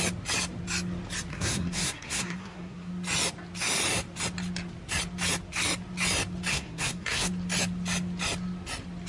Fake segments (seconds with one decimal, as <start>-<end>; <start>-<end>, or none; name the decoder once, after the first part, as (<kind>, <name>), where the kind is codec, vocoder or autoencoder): 1.3-2.9 (codec, SNAC); 6.5-7.3